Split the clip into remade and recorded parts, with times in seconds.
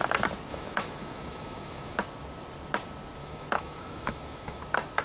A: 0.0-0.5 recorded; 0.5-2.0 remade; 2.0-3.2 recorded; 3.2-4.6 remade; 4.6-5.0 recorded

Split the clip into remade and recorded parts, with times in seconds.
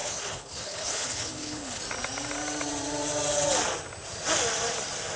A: 0.0-1.8 remade; 1.8-5.2 recorded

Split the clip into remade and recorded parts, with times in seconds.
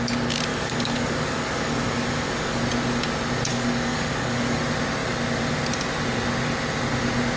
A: 0.0-0.5 recorded; 0.5-2.6 remade; 2.6-3.5 recorded; 3.5-4.6 remade; 4.6-7.4 recorded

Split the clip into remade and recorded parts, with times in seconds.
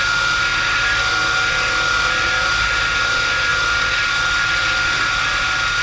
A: 0.0-5.8 recorded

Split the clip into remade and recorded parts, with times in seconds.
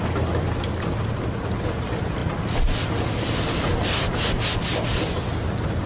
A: 0.0-5.9 recorded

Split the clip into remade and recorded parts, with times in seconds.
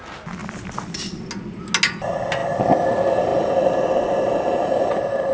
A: 0.0-5.3 recorded